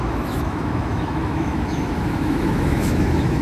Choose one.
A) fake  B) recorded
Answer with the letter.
A